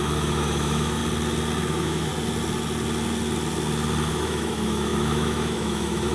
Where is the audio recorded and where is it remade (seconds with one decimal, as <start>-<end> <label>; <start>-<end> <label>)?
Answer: 0.0-1.0 remade; 1.0-1.7 recorded; 1.7-2.1 remade; 2.1-4.1 recorded; 4.1-6.1 remade